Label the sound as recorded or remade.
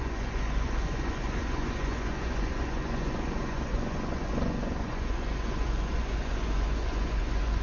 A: remade